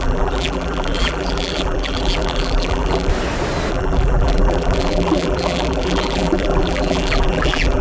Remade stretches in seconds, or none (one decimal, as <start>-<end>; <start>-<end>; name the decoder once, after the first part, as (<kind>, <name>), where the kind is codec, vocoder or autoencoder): 0.0-3.1 (vocoder, BigVGAN v2); 3.7-7.8